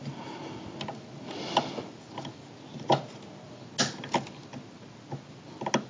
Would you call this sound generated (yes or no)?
no